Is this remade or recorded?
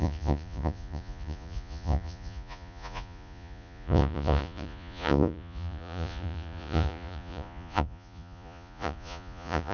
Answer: remade